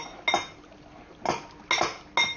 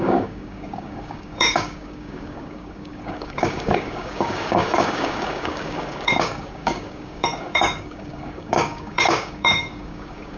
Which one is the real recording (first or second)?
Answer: first